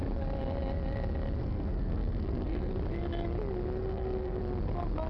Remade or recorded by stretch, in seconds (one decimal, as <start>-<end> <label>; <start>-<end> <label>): 0.0-1.4 recorded; 1.4-2.7 remade; 2.7-3.8 recorded; 3.8-4.4 remade; 4.4-5.1 recorded